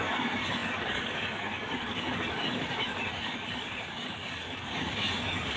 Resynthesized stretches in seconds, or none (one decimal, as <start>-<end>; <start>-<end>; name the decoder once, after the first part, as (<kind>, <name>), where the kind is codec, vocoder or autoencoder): 0.0-5.6 (codec, DAC)